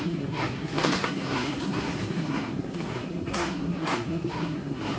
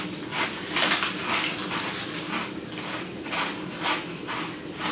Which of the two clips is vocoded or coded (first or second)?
first